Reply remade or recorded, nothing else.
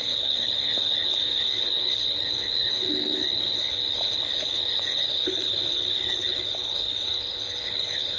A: remade